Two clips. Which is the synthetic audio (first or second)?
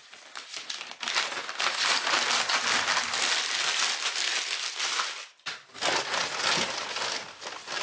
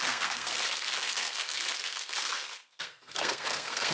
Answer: second